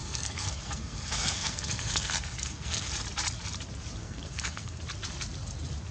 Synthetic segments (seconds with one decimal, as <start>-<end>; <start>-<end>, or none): 0.0-2.9; 4.0-4.8